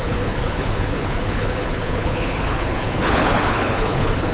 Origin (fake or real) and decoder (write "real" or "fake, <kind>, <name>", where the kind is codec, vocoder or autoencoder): fake, codec, HILCodec